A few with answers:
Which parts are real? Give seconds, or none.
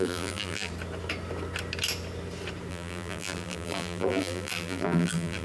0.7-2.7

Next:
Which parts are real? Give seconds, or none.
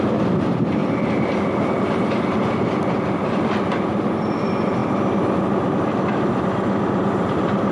0.8-1.9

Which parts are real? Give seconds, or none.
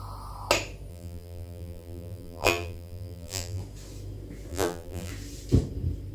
0.0-0.9; 3.6-4.5; 5.1-6.1